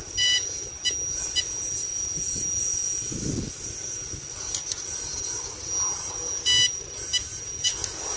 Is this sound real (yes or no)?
yes